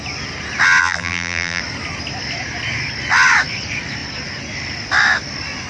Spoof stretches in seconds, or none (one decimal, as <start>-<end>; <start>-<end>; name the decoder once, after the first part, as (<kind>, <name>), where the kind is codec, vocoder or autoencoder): 0.8-1.6 (vocoder, BigVGAN v2)